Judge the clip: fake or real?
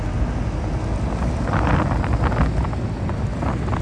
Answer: real